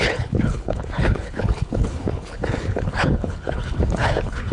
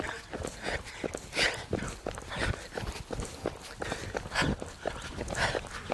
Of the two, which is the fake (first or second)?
first